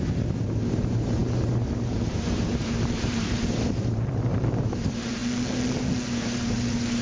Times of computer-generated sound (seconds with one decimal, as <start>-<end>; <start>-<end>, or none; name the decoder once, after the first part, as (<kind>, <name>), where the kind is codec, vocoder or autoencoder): 0.0-5.2 (vocoder, BigVGAN v2); 6.1-7.0